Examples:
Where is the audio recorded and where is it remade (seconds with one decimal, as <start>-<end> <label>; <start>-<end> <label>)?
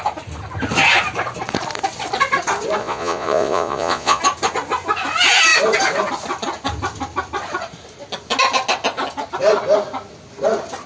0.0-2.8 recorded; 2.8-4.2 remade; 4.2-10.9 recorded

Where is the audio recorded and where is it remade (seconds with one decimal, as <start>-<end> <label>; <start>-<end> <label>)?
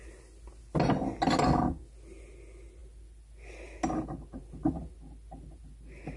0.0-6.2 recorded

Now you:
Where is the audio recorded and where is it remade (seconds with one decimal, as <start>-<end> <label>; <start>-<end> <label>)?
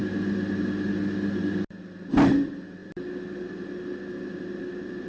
0.0-5.1 recorded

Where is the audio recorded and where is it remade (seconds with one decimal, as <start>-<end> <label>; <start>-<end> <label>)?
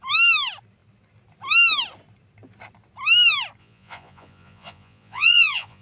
0.0-3.6 recorded; 3.6-5.8 remade